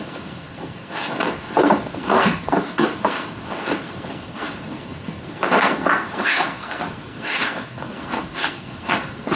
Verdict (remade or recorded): remade